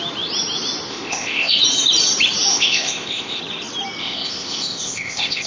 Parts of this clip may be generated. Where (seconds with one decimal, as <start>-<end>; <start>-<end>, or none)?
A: 0.9-1.6; 2.5-3.4; 4.0-5.5

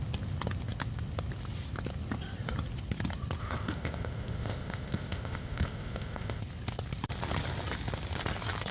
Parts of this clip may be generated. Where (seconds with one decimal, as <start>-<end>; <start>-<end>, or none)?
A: 3.4-6.4

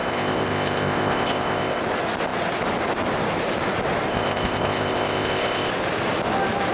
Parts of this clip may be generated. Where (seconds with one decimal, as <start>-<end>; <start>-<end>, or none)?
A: 0.0-1.8; 4.1-5.7

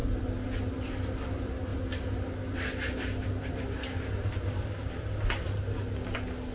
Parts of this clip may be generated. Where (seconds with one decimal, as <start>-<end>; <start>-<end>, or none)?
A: none

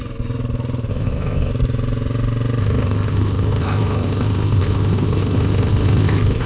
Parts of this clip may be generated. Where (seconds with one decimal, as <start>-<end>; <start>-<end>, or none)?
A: 0.9-1.5; 2.6-6.5

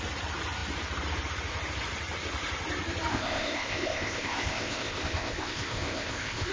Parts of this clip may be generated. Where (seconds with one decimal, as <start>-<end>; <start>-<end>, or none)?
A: 3.1-6.5